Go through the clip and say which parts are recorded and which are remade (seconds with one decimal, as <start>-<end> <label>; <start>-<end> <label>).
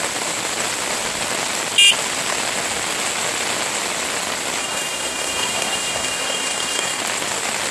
0.0-4.6 recorded; 4.6-7.0 remade; 7.0-7.7 recorded